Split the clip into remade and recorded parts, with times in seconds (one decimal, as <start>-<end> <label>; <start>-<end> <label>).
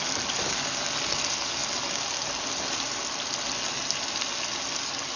0.0-5.2 recorded